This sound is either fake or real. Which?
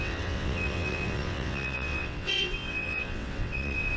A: fake